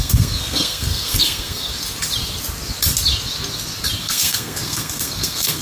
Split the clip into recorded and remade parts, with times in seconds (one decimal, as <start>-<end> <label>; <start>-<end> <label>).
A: 0.0-1.7 remade; 1.7-4.0 recorded; 4.0-5.6 remade